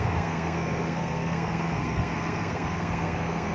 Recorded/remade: remade